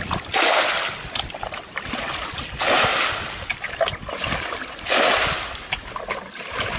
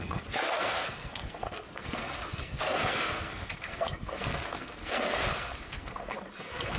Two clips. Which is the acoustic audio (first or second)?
first